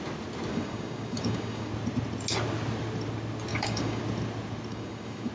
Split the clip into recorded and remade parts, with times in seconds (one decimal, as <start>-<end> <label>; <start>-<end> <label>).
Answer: 0.0-0.5 recorded; 0.5-1.7 remade; 1.7-3.5 recorded; 3.5-4.0 remade; 4.0-4.7 recorded; 4.7-5.3 remade